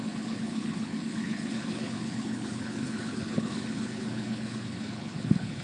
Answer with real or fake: fake